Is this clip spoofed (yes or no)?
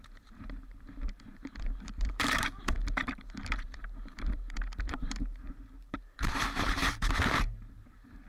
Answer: yes